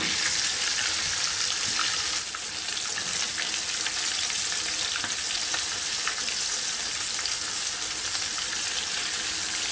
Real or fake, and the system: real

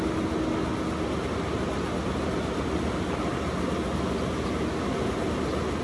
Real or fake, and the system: real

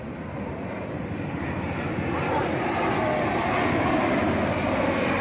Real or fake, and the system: real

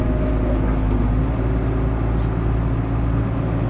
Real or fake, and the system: real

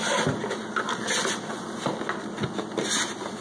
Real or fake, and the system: real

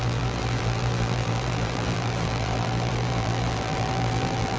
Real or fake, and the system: fake, vocoder, BigVGAN v2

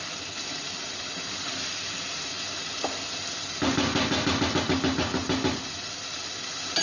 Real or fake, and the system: real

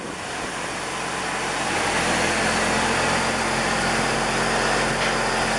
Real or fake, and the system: real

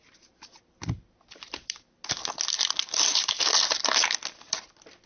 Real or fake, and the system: real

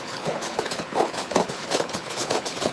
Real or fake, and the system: fake, codec, HILCodec